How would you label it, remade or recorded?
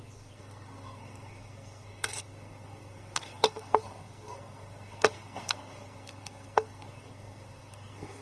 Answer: remade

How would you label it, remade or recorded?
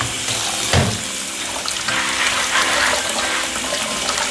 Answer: recorded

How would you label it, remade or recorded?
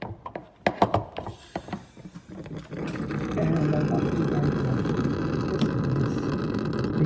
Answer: recorded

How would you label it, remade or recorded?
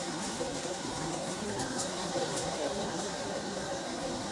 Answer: remade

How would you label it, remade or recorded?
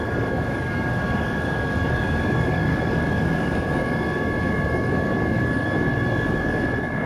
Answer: remade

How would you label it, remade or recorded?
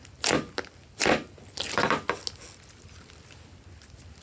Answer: recorded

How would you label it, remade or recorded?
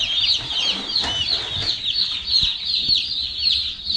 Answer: recorded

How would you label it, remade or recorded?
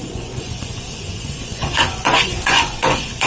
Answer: remade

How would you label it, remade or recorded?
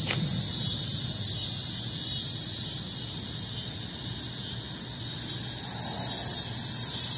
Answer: recorded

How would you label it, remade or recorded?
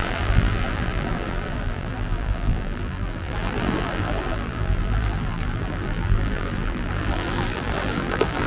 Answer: remade